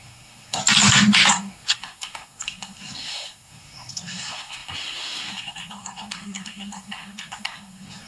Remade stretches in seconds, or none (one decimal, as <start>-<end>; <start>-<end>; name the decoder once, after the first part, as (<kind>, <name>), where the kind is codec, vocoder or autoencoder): 0.0-0.6 (codec, SNAC); 1.3-8.1